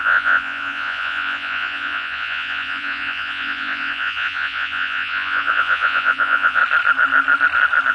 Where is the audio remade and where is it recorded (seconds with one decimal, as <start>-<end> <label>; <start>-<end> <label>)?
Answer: 0.0-6.6 remade; 6.6-7.9 recorded